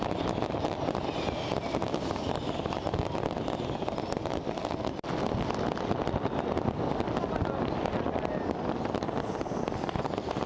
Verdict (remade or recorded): recorded